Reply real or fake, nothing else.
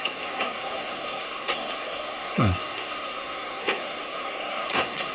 fake